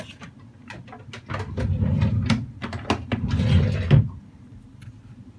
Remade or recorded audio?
recorded